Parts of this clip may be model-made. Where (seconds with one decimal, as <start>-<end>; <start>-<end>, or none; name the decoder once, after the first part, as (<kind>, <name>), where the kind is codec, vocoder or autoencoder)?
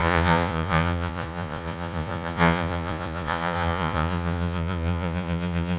0.0-5.8 (vocoder, Vocos)